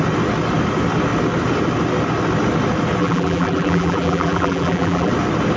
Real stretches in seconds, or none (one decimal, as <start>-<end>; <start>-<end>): 0.0-3.0; 5.1-5.6